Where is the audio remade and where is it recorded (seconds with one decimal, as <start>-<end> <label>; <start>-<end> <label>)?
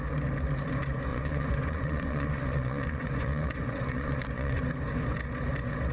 0.0-1.1 recorded; 1.1-4.6 remade; 4.6-5.9 recorded